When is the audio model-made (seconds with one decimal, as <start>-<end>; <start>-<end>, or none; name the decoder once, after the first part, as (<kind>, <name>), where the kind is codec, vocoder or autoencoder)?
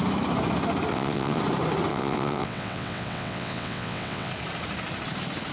0.9-1.4 (vocoder, WaveNeXt); 1.9-4.3